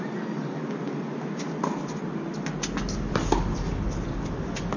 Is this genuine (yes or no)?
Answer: yes